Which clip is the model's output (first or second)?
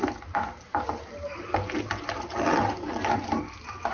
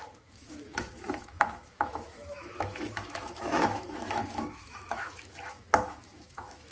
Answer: second